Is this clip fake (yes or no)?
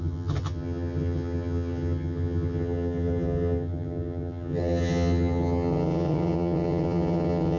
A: yes